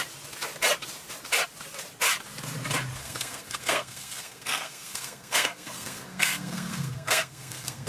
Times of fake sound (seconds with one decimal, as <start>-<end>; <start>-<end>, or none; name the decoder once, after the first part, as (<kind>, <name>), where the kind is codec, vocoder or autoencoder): 3.0-7.9 (codec, SNAC)